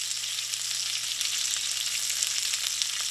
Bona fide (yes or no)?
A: yes